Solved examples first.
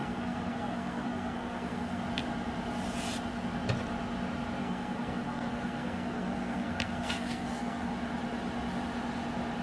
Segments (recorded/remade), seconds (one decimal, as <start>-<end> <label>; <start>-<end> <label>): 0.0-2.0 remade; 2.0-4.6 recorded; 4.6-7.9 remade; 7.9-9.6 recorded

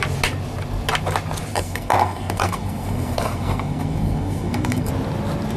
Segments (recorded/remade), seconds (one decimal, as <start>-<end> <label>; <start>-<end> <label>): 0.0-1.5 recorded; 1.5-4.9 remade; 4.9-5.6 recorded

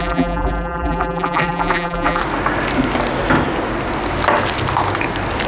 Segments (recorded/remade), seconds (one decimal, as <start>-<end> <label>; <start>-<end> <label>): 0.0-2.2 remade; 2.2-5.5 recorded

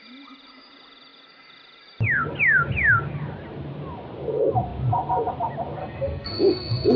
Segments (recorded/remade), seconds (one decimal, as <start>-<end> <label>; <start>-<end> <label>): 0.0-5.8 recorded; 5.8-7.0 remade

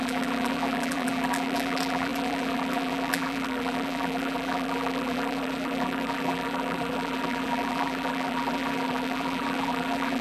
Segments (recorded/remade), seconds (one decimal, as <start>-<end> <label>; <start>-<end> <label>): 0.0-10.2 remade